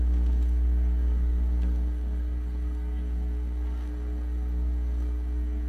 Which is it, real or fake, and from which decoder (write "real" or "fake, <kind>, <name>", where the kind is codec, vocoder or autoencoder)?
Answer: fake, codec, SNAC